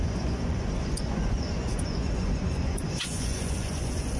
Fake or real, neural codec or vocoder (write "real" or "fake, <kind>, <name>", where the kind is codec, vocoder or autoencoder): fake, vocoder, Vocos